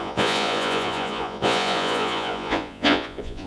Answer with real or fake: fake